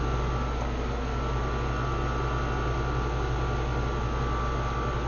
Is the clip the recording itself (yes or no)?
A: yes